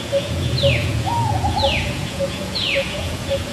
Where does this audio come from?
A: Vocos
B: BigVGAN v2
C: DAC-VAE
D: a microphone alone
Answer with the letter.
A